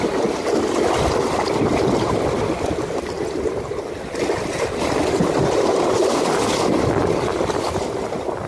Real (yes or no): yes